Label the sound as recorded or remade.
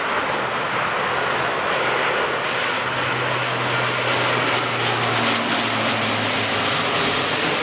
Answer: recorded